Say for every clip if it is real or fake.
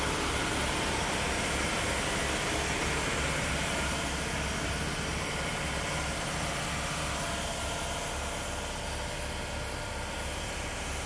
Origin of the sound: real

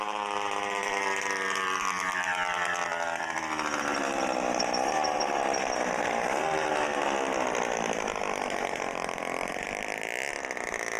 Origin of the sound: fake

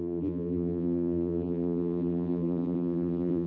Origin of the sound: fake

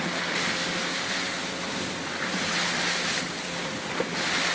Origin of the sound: real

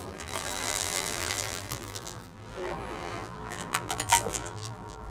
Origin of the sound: fake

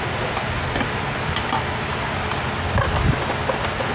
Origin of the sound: real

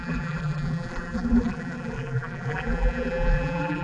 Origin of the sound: fake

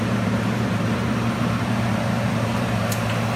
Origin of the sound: fake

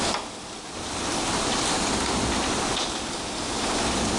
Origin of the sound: real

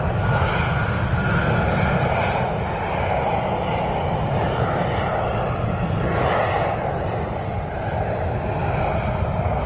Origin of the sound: real